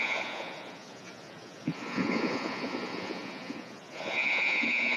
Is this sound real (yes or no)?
no